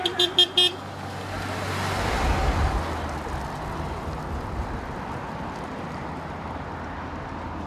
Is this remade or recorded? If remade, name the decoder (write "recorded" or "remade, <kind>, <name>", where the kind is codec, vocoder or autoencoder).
recorded